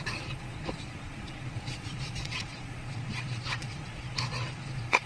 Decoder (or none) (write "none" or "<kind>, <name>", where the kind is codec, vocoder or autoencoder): vocoder, Vocos